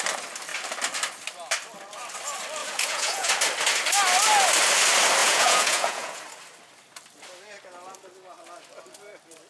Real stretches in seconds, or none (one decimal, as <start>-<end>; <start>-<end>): 0.0-2.6; 3.3-5.2; 6.2-9.5